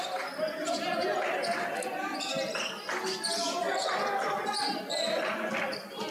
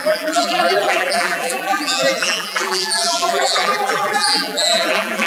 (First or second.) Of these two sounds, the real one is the first